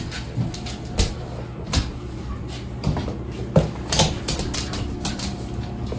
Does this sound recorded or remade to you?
recorded